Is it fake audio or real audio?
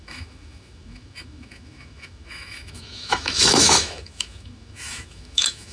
fake